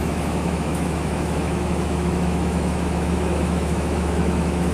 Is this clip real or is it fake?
fake